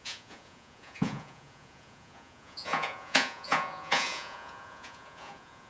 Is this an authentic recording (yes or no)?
no